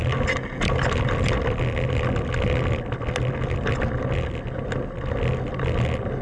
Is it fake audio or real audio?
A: real